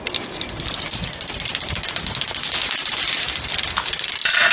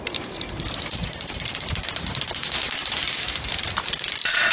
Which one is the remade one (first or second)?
second